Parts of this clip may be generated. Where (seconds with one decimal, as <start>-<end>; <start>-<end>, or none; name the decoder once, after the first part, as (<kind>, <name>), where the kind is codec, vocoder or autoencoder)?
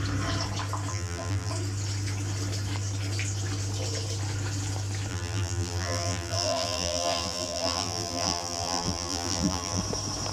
0.9-1.5 (vocoder, BigVGAN v2); 5.1-9.8